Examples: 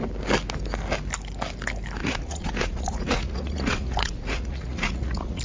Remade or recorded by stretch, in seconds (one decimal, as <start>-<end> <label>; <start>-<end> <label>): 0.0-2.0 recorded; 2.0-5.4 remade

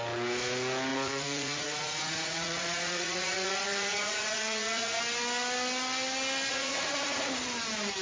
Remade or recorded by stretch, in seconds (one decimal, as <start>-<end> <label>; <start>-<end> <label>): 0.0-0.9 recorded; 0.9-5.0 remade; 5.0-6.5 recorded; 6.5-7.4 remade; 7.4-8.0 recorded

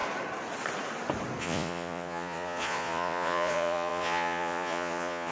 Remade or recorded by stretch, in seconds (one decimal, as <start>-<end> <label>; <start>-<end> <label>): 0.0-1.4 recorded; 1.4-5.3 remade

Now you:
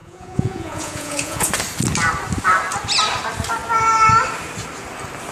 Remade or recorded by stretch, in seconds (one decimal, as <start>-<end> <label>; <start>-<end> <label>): 0.0-1.5 remade; 1.5-5.3 recorded